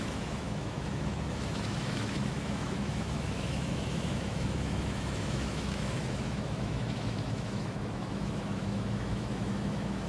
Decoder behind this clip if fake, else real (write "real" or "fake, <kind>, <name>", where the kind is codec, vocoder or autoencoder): fake, autoencoder, DAC-VAE